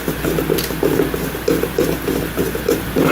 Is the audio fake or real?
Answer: real